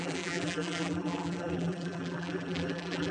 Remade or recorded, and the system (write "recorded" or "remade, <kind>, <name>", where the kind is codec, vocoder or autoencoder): remade, vocoder, BigVGAN v2